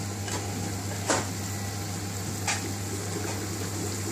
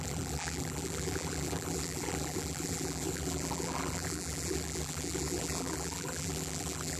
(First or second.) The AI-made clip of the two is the second